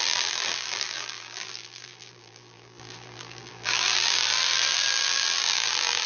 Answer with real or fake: fake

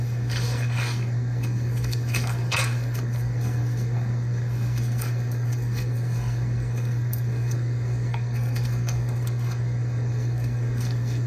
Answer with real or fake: fake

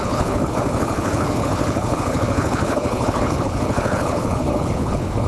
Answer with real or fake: fake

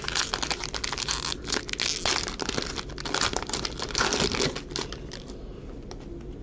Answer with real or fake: real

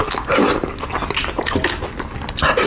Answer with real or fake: real